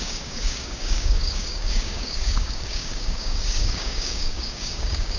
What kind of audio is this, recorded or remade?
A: remade